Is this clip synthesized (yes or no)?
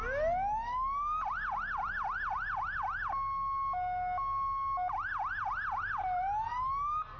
no